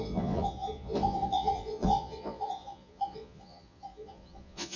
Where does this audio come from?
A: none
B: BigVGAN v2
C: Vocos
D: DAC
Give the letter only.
C